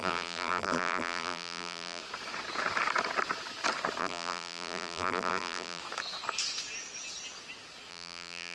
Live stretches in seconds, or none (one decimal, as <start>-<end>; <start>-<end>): 2.0-4.0; 5.8-7.9